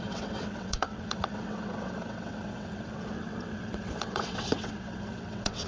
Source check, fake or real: fake